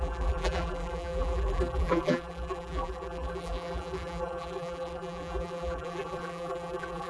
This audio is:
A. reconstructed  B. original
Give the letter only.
A